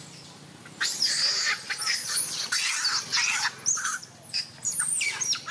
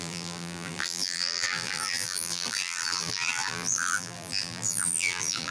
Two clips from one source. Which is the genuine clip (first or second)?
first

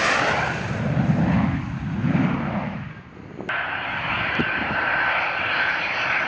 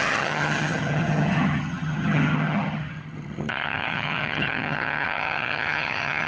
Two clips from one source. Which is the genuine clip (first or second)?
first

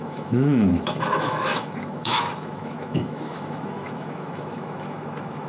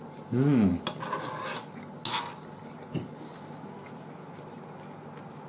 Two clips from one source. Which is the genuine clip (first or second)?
second